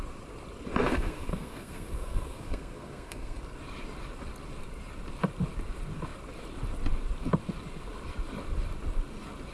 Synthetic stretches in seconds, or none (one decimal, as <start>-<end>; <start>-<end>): 0.8-3.4

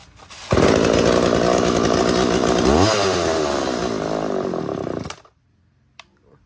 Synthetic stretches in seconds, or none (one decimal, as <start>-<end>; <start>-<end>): none

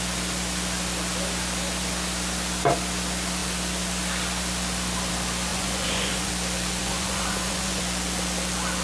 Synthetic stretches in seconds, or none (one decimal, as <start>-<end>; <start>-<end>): 5.5-6.3; 6.8-7.8

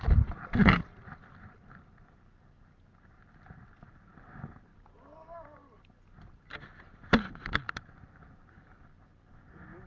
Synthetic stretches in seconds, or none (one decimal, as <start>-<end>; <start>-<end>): none

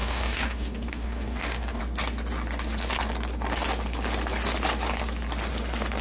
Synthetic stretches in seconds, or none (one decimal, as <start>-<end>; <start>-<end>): 0.0-1.8